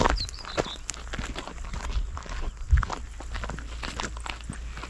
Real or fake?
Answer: real